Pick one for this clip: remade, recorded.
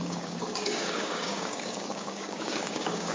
remade